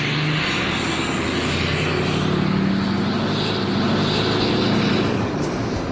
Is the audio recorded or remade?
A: recorded